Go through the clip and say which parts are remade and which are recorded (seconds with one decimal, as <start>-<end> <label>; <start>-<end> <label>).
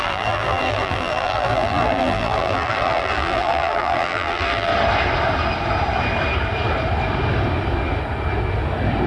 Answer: 0.0-4.7 remade; 4.7-9.1 recorded